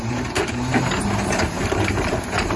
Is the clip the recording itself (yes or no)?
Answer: no